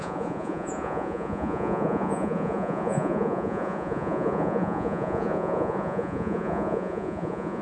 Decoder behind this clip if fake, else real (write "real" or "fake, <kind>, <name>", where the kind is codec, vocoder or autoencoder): fake, vocoder, Vocos